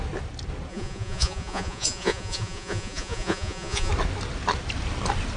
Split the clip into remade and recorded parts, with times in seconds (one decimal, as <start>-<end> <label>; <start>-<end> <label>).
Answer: 0.0-0.7 recorded; 0.7-3.9 remade; 3.9-5.4 recorded